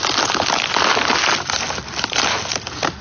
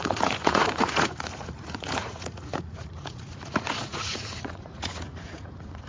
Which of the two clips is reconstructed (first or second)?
second